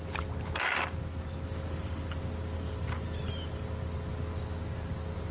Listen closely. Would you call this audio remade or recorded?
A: recorded